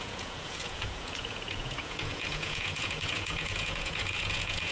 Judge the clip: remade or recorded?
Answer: remade